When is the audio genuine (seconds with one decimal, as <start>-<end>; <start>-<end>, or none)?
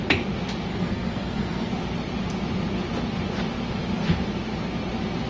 0.0-0.7; 1.7-5.3